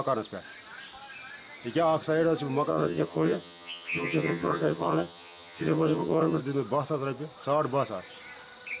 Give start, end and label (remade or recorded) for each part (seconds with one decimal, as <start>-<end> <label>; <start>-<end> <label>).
0.0-2.7 recorded; 2.7-6.4 remade; 6.4-8.8 recorded